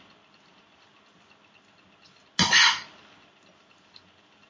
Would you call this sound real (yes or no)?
yes